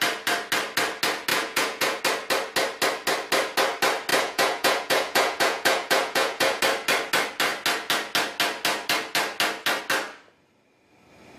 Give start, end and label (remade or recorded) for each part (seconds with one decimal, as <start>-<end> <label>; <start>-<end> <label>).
0.0-1.3 recorded; 1.3-2.0 remade; 2.0-4.1 recorded; 4.1-6.6 remade; 6.6-11.4 recorded